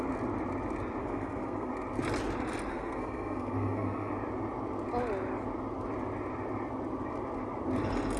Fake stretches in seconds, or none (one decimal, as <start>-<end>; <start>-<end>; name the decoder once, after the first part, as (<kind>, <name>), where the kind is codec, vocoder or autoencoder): 1.0-1.7 (codec, SNAC); 2.7-4.1